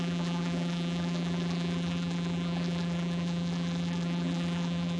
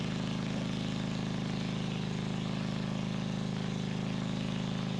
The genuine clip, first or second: second